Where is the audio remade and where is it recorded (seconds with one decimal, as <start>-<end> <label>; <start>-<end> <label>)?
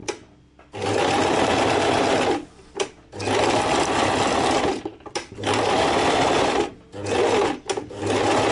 0.0-8.5 recorded